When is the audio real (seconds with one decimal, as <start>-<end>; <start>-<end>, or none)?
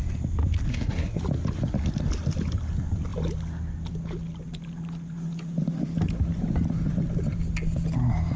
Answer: 0.0-0.7; 1.2-8.4